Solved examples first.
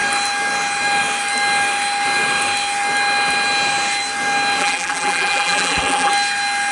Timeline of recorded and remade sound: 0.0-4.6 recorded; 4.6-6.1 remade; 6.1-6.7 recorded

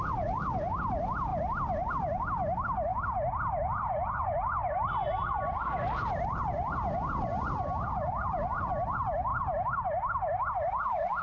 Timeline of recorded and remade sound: 0.0-11.2 recorded

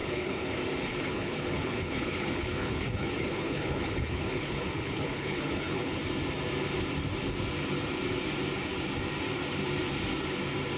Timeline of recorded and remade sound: 0.0-0.5 remade; 0.5-0.9 recorded; 0.9-6.0 remade; 6.0-10.8 recorded